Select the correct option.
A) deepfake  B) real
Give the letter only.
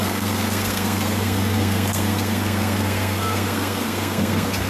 A